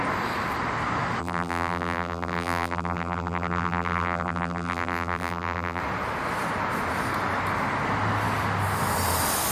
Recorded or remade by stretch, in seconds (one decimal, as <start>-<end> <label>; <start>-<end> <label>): 0.0-1.2 recorded; 1.2-5.8 remade; 5.8-9.5 recorded